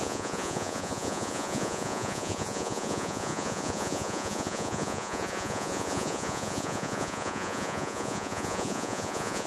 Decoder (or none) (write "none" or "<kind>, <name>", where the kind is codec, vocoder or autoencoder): vocoder, Vocos